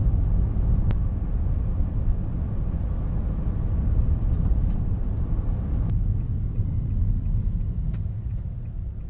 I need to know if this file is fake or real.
real